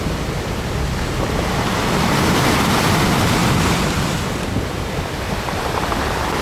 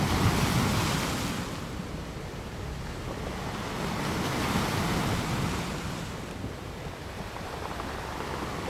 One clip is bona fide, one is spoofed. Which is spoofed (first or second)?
first